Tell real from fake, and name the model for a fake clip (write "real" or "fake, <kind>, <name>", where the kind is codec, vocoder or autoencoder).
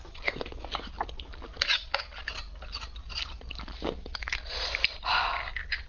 real